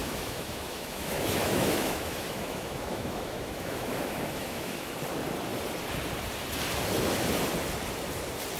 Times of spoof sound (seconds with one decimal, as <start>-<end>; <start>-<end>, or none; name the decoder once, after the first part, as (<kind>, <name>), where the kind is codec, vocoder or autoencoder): 0.0-4.9 (autoencoder, DAC-VAE)